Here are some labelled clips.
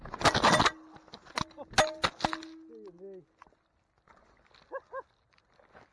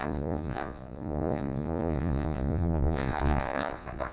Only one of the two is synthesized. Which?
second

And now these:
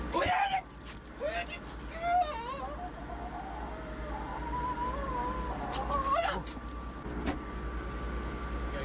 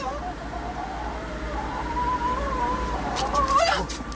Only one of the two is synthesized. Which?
second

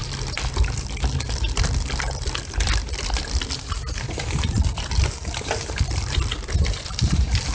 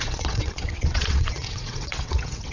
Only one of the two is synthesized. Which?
second